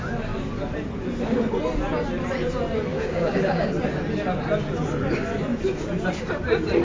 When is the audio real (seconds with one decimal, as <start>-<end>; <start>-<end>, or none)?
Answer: 0.0-2.9; 3.7-6.8